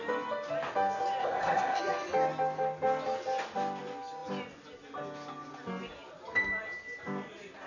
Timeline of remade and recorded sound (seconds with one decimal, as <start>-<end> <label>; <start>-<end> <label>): 0.0-1.2 recorded; 1.2-1.8 remade; 1.8-7.7 recorded